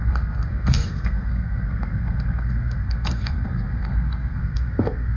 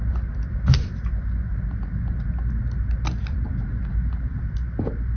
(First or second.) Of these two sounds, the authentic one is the second